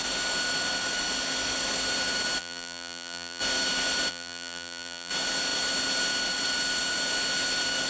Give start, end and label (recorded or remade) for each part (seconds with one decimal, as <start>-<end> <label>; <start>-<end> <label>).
0.0-2.4 recorded; 2.4-3.4 remade; 3.4-4.1 recorded; 4.1-5.1 remade; 5.1-7.9 recorded